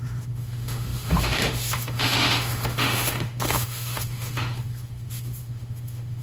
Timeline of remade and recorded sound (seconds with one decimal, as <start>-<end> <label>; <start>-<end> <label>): 0.0-6.2 remade